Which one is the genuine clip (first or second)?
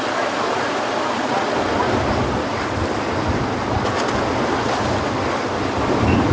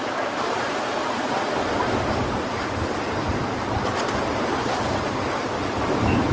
first